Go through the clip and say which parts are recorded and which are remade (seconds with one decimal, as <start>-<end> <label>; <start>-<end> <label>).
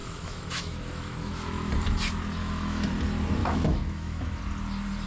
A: 0.0-1.7 remade; 1.7-2.4 recorded; 2.4-2.9 remade; 2.9-3.4 recorded; 3.4-4.4 remade; 4.4-5.1 recorded